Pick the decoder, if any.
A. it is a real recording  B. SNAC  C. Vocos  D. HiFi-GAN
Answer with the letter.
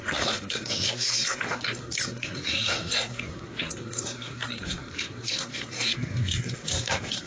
B